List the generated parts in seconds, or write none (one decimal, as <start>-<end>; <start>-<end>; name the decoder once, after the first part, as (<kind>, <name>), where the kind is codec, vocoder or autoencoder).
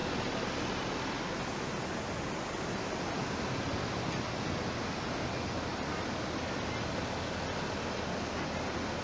none